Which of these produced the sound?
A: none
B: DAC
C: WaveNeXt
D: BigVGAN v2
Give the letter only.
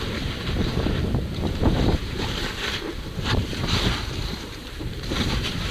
D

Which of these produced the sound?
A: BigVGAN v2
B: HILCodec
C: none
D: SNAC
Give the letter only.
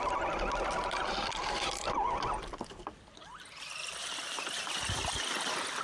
C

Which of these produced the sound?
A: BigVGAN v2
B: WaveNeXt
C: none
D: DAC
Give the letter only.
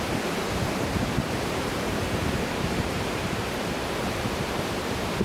A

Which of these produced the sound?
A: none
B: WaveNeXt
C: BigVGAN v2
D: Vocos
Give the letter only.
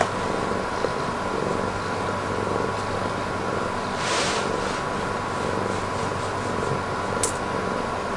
A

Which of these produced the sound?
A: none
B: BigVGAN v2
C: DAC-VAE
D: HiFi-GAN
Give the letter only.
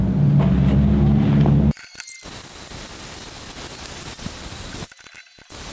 A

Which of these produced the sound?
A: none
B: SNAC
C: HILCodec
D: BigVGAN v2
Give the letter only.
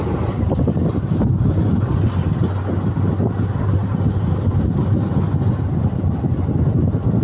A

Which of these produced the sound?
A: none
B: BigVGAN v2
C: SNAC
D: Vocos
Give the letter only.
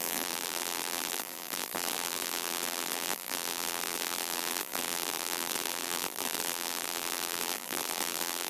B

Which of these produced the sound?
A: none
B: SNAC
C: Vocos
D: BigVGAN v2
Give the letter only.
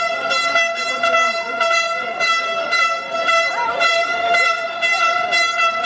D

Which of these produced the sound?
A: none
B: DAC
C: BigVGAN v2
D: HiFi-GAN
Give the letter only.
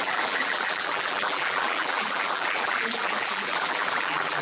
C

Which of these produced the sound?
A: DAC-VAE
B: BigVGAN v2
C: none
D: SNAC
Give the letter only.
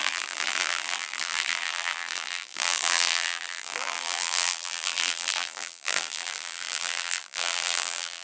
B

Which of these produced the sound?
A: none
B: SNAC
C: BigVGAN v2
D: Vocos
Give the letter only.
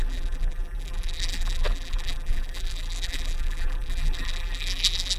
C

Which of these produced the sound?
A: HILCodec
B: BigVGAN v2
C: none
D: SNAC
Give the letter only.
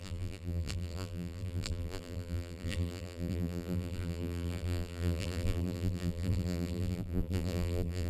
B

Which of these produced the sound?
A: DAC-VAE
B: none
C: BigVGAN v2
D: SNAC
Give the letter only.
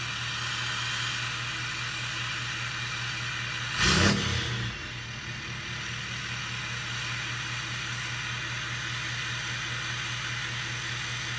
B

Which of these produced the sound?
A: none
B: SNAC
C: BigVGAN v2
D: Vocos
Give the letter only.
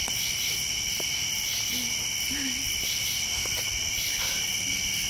A